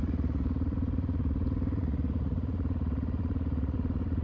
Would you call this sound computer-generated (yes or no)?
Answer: yes